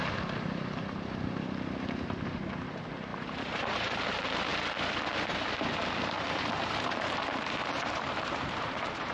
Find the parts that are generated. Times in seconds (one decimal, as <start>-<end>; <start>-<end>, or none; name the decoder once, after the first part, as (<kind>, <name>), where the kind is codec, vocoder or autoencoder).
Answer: 0.0-4.5 (vocoder, BigVGAN v2); 6.0-9.1